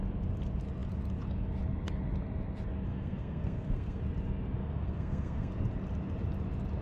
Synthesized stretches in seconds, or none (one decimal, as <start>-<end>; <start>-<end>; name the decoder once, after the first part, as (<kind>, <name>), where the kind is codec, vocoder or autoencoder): 2.9-4.0 (codec, SNAC); 4.6-5.5